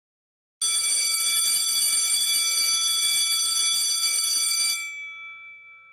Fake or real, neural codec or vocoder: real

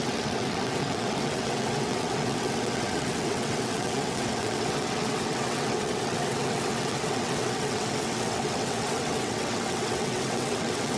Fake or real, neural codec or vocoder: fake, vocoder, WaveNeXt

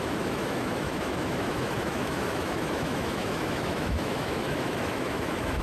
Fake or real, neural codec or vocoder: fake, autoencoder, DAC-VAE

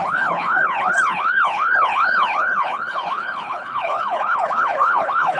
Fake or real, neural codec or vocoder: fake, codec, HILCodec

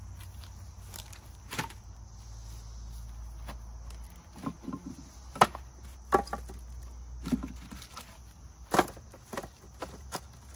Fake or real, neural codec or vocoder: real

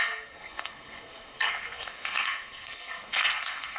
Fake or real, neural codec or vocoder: fake, codec, SNAC